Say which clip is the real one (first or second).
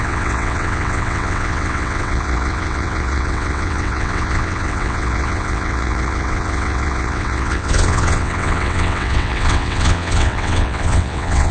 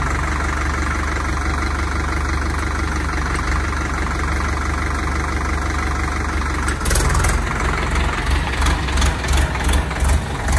second